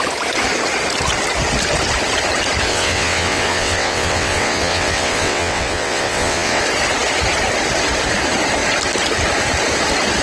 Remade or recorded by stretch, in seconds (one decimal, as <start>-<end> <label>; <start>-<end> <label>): 0.0-2.7 recorded; 2.7-6.6 remade; 6.6-10.2 recorded